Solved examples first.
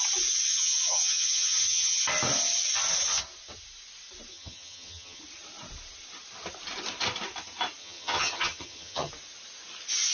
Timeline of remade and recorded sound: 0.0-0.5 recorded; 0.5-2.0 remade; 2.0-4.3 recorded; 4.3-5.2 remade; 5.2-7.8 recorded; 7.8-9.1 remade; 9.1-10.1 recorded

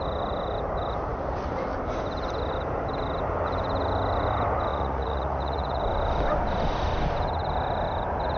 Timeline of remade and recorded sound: 0.0-4.7 recorded; 4.7-5.8 remade; 5.8-8.4 recorded

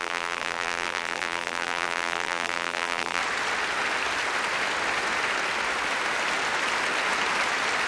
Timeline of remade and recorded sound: 0.0-3.2 remade; 3.2-7.9 recorded

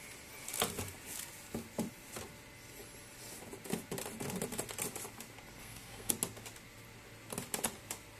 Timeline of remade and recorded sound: 0.0-5.6 recorded; 5.6-6.1 remade; 6.1-8.2 recorded

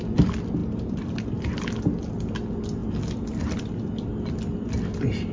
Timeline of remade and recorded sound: 0.0-0.6 recorded; 0.6-1.4 remade; 1.4-5.3 recorded